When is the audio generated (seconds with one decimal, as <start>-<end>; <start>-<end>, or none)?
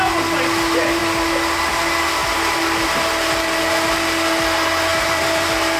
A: 2.2-3.6; 4.9-5.8